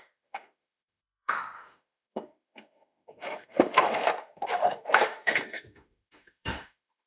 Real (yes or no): no